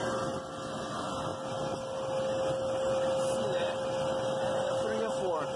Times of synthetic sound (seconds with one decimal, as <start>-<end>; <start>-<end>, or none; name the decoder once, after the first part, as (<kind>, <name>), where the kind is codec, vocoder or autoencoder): none